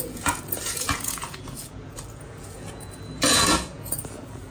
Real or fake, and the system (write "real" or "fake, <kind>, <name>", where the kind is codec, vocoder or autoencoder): fake, vocoder, Vocos